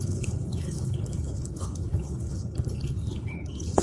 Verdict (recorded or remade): remade